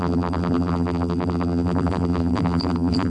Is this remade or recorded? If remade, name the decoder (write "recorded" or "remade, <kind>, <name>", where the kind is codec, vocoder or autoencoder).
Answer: remade, vocoder, BigVGAN v2